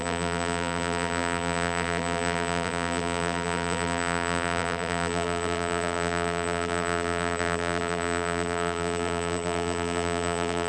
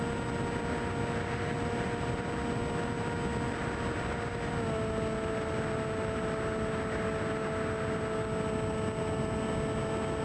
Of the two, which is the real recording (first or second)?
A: second